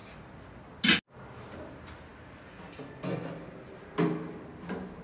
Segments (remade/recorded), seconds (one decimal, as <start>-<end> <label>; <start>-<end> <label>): 0.0-5.0 recorded